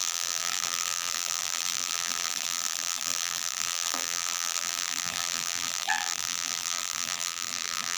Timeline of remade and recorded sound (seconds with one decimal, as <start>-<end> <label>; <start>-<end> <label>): 0.0-8.0 remade